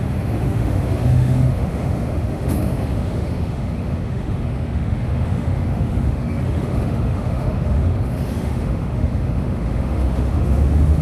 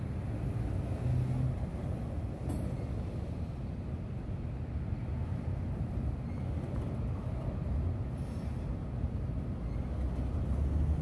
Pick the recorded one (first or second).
second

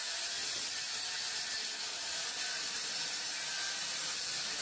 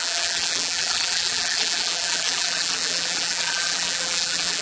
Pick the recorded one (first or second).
first